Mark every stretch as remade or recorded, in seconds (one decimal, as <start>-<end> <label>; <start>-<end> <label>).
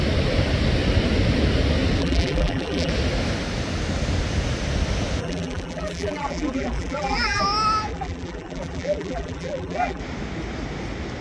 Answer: 0.0-2.0 recorded; 2.0-2.9 remade; 2.9-5.2 recorded; 5.2-7.4 remade; 7.4-7.9 recorded; 7.9-10.0 remade; 10.0-11.2 recorded